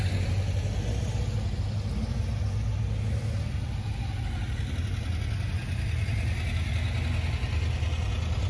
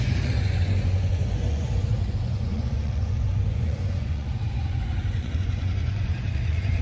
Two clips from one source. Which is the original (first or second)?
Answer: first